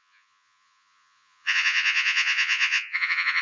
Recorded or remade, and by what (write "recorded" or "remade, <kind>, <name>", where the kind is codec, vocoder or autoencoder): remade, vocoder, Vocos